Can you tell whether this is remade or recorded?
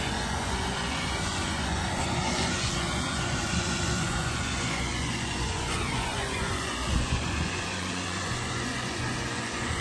remade